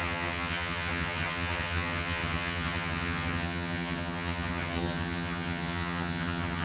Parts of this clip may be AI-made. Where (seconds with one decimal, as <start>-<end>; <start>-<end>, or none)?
0.0-6.6